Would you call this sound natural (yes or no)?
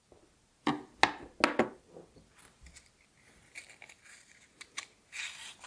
yes